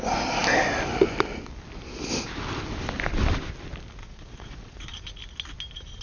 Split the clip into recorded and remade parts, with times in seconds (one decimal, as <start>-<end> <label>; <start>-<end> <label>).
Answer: 0.0-4.0 recorded; 4.0-4.8 remade; 4.8-6.0 recorded